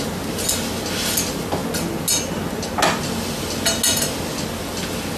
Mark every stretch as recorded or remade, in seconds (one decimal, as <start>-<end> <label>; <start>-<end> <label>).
0.0-5.2 recorded